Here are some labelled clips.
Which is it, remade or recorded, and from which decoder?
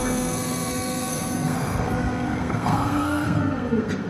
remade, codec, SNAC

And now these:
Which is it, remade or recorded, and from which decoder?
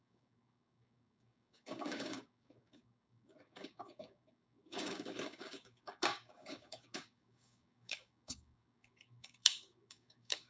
remade, codec, DAC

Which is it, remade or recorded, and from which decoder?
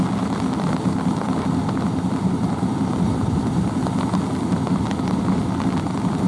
recorded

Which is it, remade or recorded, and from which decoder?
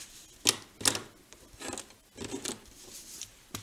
recorded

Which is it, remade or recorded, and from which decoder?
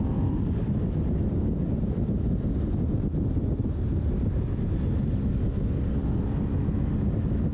recorded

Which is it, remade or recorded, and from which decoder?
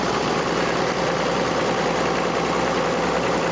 recorded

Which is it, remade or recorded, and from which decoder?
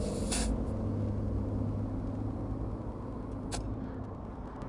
recorded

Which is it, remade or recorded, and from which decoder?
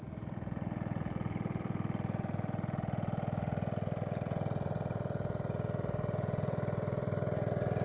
remade, vocoder, BigVGAN v2